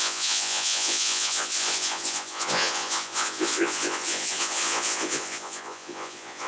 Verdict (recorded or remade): remade